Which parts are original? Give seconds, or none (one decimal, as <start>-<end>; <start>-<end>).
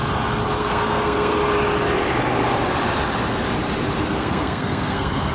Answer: 0.0-0.6; 1.4-4.1